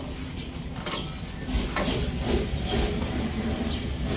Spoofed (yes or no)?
no